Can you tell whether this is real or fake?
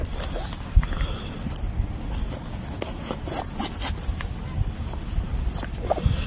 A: real